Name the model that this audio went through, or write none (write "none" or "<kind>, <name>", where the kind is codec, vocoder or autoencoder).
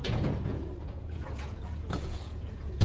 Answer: vocoder, Vocos